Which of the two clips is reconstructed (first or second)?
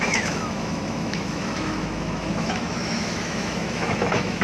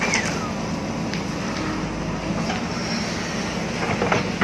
first